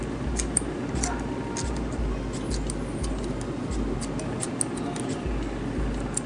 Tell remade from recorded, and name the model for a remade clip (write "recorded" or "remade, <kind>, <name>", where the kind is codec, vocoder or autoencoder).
recorded